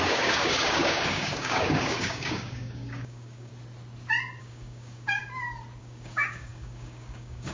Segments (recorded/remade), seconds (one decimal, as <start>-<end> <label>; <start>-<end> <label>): 0.0-3.5 remade; 3.5-4.4 recorded; 4.4-5.2 remade; 5.2-5.8 recorded; 5.8-7.5 remade